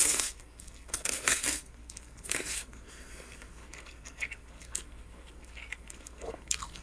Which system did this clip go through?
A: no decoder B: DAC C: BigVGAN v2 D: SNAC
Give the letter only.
D